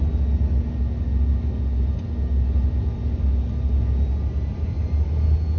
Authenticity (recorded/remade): recorded